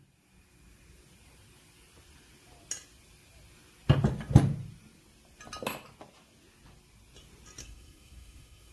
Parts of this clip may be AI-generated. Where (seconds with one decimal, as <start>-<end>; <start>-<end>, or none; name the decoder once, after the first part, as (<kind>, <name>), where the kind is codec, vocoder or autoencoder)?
7.6-8.7 (codec, SNAC)